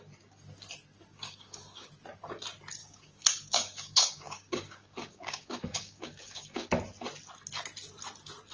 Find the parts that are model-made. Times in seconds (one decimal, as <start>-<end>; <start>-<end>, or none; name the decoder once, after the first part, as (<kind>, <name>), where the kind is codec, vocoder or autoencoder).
1.1-1.9 (codec, DAC); 2.8-6.7